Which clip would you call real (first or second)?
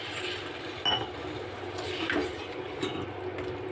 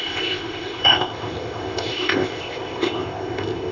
first